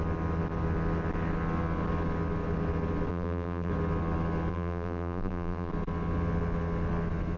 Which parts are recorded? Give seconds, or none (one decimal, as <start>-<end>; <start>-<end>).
0.0-3.1; 3.7-4.5; 5.7-7.4